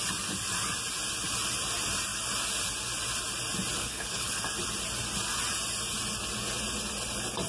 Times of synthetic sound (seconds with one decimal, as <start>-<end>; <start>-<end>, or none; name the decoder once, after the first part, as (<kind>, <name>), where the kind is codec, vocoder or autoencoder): 3.8-4.4 (codec, HILCodec)